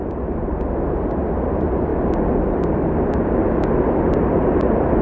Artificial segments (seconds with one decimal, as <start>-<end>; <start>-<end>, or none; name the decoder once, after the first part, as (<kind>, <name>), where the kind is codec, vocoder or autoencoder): none